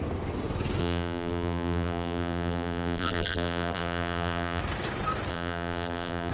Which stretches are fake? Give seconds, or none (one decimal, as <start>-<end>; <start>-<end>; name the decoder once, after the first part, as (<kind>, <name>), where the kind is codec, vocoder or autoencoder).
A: 0.8-4.6 (vocoder, BigVGAN v2); 5.3-6.3